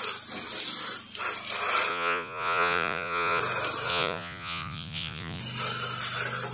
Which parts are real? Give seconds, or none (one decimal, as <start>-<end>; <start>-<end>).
0.0-1.9; 3.4-3.9; 5.4-6.5